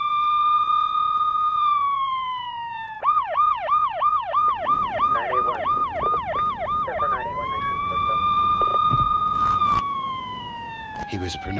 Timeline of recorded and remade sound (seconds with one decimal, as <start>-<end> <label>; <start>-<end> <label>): 0.0-5.8 remade; 5.8-7.0 recorded; 7.0-11.6 remade